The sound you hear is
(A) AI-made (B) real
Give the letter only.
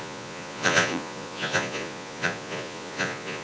A